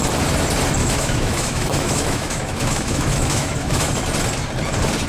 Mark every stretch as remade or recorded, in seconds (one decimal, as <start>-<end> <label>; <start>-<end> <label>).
0.0-0.8 recorded; 0.8-3.9 remade; 3.9-5.1 recorded